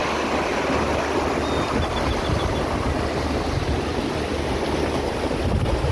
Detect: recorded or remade recorded